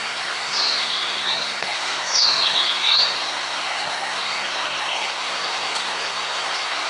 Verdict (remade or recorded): remade